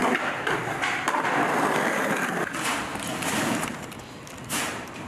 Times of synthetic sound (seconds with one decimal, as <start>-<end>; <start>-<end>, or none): 2.9-4.0